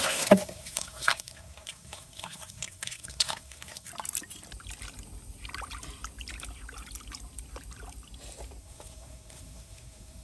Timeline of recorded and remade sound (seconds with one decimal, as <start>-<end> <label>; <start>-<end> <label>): 0.0-3.9 remade; 3.9-8.6 recorded; 8.6-10.2 remade